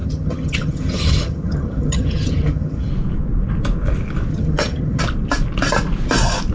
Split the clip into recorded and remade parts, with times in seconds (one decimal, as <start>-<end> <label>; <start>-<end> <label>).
0.0-2.9 remade; 2.9-4.3 recorded; 4.3-5.0 remade; 5.0-6.5 recorded